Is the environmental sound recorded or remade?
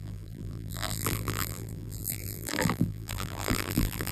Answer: remade